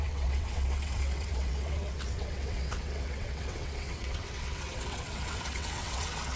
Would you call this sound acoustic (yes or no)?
no